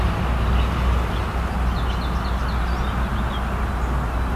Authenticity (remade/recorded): recorded